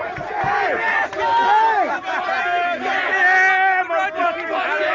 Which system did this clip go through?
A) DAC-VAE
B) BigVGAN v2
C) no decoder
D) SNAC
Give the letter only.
C